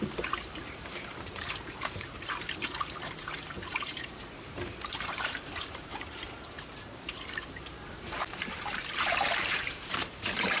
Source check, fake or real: fake